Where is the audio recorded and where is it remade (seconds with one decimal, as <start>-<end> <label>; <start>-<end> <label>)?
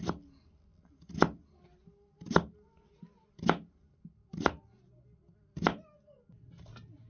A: 0.0-7.1 recorded